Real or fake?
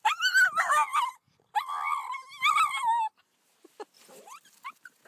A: real